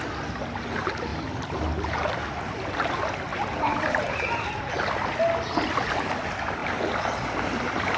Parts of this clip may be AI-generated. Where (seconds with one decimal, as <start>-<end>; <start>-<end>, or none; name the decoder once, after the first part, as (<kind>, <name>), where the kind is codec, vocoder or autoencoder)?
3.3-4.7 (vocoder, BigVGAN v2)